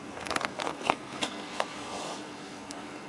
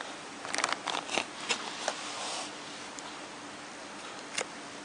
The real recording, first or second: second